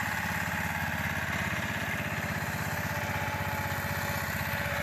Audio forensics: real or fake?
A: real